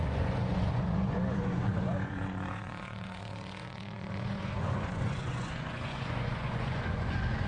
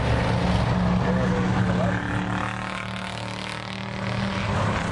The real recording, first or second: second